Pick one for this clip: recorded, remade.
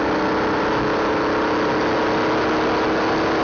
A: recorded